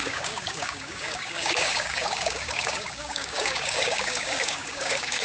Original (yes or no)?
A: no